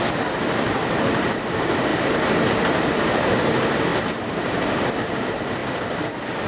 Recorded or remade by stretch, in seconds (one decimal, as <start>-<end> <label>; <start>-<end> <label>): 0.0-5.6 remade; 5.6-6.5 recorded